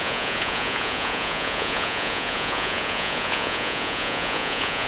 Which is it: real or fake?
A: fake